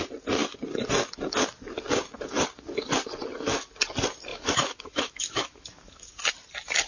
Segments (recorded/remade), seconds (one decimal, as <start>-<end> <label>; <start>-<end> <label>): 0.0-4.3 recorded; 4.3-6.1 remade; 6.1-6.9 recorded